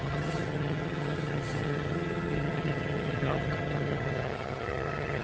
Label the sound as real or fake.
fake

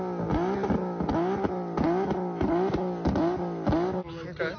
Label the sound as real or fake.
real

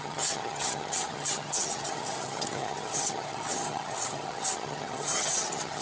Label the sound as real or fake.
fake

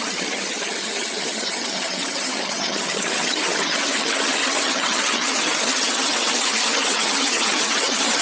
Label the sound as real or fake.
fake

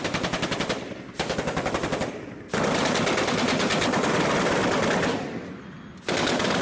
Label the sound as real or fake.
real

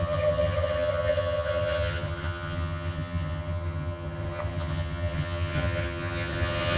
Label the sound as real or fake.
fake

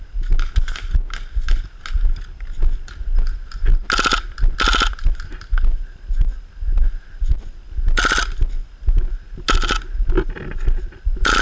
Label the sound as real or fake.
real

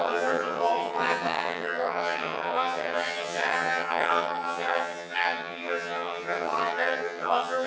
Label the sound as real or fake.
fake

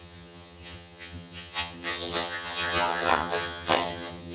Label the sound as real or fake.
fake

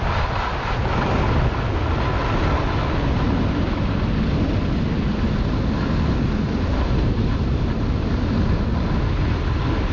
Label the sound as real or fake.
real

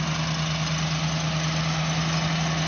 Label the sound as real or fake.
real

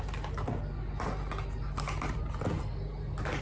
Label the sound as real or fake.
real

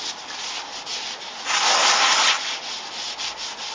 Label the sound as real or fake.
real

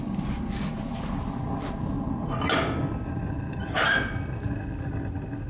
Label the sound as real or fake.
real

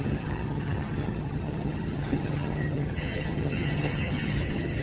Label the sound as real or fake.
fake